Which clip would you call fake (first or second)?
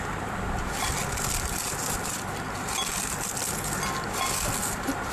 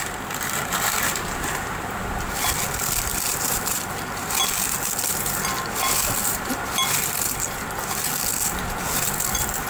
second